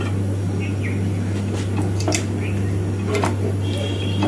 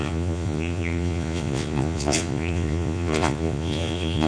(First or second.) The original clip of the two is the first